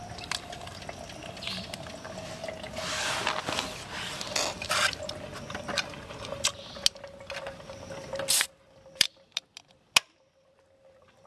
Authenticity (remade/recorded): recorded